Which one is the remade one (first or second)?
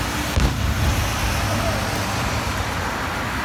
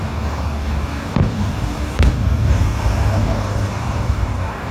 second